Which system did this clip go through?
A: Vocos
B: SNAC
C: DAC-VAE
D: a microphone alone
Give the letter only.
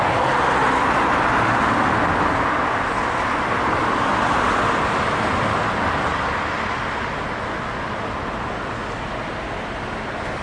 D